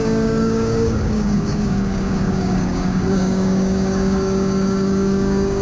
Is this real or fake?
fake